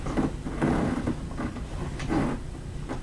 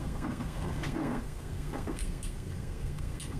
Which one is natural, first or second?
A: first